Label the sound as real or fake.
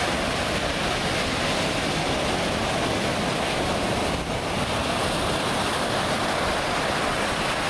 fake